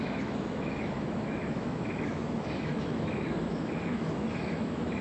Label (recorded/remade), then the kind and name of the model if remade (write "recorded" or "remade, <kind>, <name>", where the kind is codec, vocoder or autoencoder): remade, autoencoder, DAC-VAE